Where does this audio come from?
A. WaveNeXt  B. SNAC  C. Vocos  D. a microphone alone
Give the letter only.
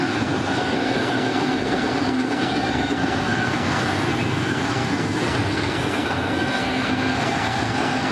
B